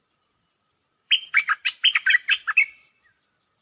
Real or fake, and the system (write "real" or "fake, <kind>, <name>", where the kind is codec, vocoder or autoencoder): fake, vocoder, BigVGAN v2